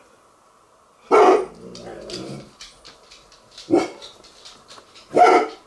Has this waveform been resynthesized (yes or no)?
no